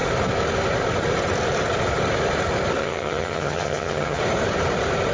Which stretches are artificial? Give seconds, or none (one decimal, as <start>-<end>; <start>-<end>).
2.8-4.2